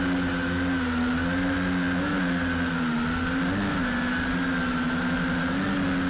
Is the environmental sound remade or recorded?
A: recorded